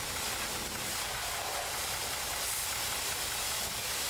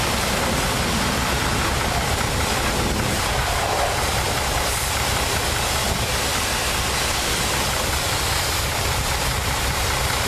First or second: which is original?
first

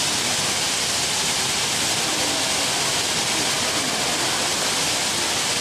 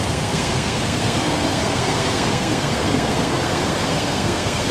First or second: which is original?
first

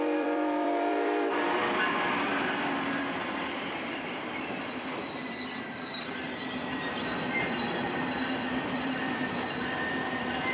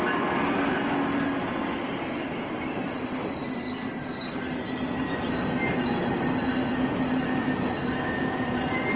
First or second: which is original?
second